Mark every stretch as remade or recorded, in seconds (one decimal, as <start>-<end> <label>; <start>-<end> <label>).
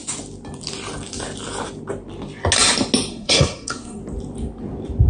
0.0-3.1 recorded; 3.1-4.0 remade; 4.0-5.1 recorded